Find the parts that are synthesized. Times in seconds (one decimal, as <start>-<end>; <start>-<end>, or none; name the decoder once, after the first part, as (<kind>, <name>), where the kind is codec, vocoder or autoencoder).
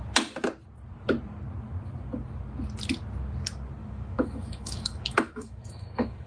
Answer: 3.8-6.3 (autoencoder, DAC-VAE)